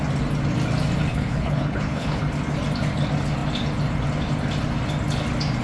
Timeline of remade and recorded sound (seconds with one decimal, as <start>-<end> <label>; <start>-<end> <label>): 0.0-1.1 recorded; 1.1-2.2 remade; 2.2-5.6 recorded

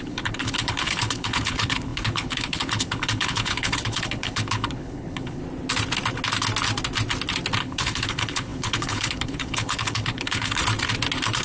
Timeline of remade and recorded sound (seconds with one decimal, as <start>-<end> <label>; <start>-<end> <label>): 0.0-5.4 remade; 5.4-7.6 recorded; 7.6-10.6 remade; 10.6-11.4 recorded